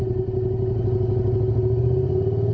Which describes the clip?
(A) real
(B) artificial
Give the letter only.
A